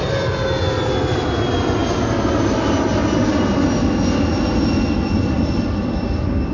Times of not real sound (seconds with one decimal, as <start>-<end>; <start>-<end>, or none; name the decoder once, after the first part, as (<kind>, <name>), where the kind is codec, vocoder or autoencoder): none